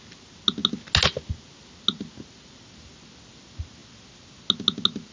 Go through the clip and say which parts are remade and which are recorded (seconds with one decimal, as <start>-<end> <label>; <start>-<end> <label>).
0.0-5.1 recorded